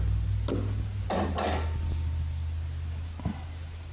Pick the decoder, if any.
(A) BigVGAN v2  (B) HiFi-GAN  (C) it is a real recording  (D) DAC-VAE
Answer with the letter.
C